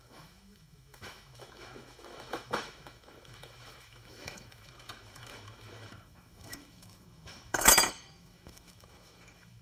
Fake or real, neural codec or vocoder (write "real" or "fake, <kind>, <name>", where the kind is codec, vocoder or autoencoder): fake, autoencoder, DAC-VAE